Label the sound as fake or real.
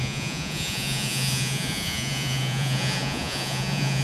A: fake